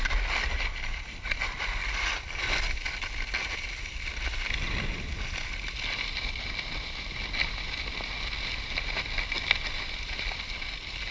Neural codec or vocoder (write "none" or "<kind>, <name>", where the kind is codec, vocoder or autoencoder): none